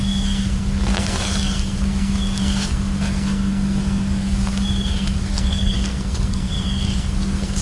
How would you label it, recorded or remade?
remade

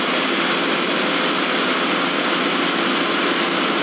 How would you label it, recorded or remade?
recorded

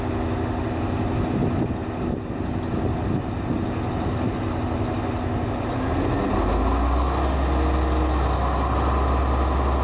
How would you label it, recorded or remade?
recorded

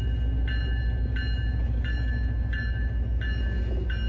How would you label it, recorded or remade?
recorded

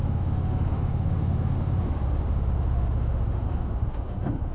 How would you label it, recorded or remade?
remade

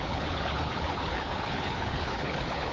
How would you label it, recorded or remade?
remade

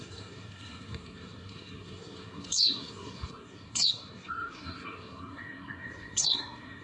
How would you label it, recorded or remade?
remade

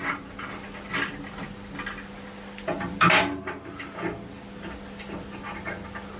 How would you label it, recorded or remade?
recorded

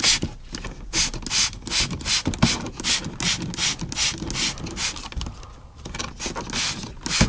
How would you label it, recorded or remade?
recorded